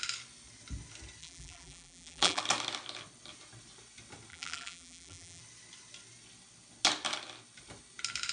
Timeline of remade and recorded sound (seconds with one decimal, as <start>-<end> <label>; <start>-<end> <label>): 0.0-1.2 recorded; 1.2-2.4 remade; 2.4-4.3 recorded; 4.3-5.4 remade; 5.4-8.3 recorded